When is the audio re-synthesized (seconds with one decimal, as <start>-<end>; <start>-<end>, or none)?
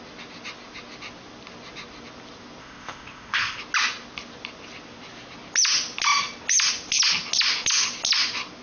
2.6-3.6